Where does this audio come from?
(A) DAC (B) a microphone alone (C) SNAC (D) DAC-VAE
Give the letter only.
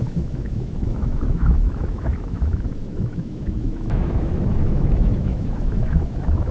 D